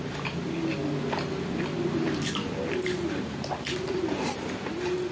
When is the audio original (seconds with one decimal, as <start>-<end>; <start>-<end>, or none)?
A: 0.0-5.1